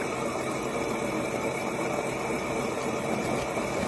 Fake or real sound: real